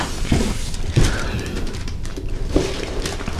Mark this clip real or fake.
fake